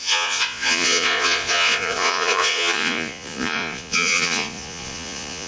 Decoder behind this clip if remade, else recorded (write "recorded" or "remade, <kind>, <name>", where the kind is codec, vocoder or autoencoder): remade, vocoder, Vocos